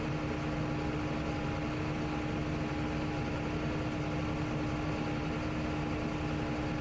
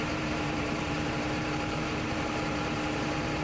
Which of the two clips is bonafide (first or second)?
first